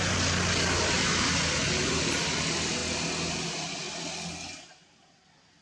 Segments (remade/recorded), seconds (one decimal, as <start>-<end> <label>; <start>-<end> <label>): 0.0-5.6 recorded